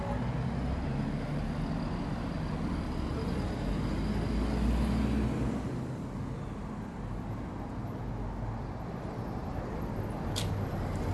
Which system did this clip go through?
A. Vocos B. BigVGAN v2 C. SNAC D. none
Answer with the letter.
D